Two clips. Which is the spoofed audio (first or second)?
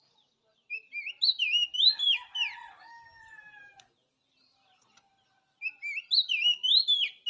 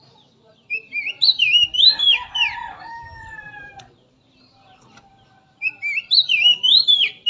second